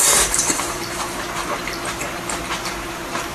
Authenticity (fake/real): fake